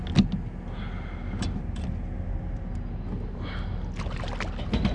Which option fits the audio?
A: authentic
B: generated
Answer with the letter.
A